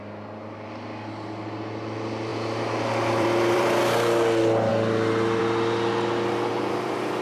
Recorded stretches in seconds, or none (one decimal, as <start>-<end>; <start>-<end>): 0.0-2.3; 3.8-6.5